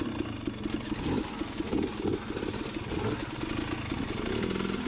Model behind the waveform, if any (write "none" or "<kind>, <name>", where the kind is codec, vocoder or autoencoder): none